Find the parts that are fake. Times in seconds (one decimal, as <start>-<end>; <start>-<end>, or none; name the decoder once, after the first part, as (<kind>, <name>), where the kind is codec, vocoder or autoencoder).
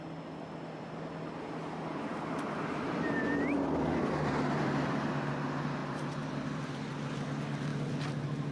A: 2.1-5.1 (vocoder, BigVGAN v2); 5.8-6.6